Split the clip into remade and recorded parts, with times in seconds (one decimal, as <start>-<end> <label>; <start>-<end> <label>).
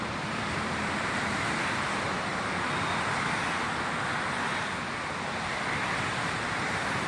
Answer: 0.0-2.3 remade; 2.3-6.6 recorded; 6.6-7.1 remade